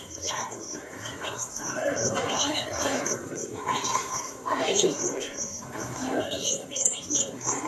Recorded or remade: remade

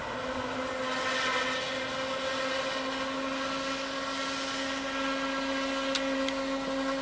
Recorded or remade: recorded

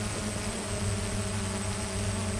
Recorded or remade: recorded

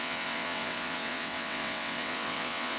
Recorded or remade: remade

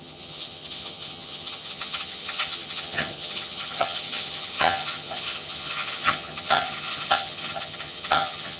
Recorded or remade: remade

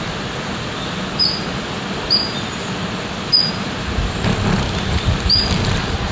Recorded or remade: recorded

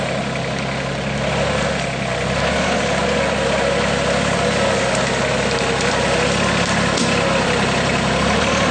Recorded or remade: recorded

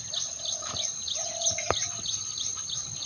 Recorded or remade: recorded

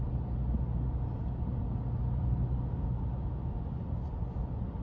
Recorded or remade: recorded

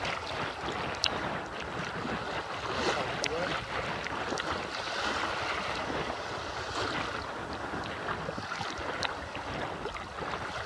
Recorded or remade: recorded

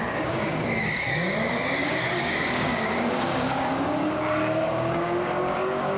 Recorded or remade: remade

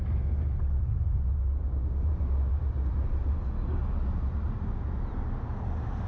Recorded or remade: recorded